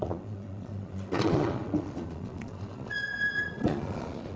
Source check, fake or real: fake